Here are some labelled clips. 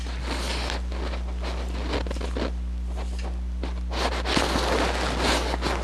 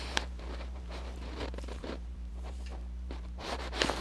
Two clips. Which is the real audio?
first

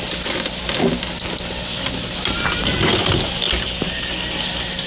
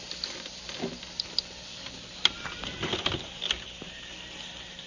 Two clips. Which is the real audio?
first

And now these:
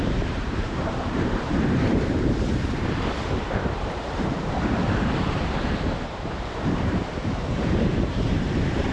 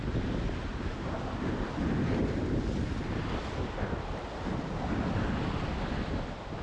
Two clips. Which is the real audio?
second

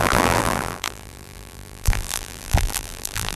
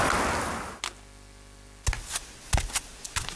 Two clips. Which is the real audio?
second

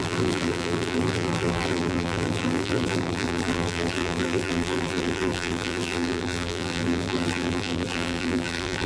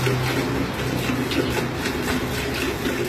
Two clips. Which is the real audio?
second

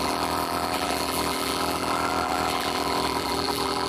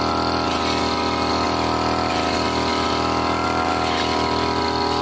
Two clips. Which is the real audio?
second